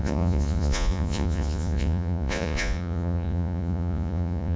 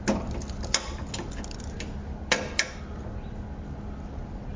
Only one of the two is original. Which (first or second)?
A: second